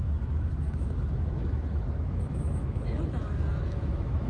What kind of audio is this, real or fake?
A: fake